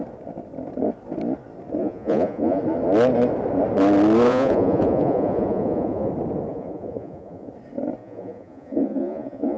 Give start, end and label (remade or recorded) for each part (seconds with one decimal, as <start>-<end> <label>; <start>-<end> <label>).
0.0-1.8 recorded; 1.8-2.6 remade; 2.6-4.3 recorded; 4.3-6.1 remade; 6.1-6.5 recorded; 6.5-7.5 remade; 7.5-8.0 recorded; 8.0-9.6 remade